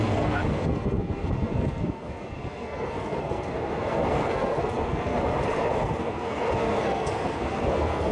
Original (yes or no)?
no